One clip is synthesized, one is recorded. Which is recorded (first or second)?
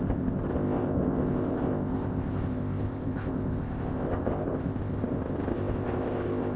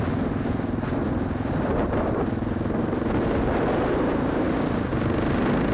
second